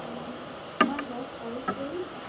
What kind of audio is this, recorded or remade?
recorded